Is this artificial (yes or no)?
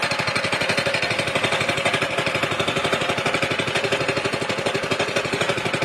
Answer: no